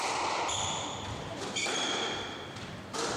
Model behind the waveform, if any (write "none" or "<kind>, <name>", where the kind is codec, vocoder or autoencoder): vocoder, BigVGAN v2